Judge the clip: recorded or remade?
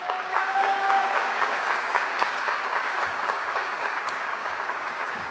remade